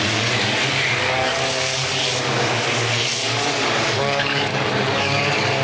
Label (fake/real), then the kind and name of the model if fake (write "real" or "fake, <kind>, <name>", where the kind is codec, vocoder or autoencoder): fake, codec, DAC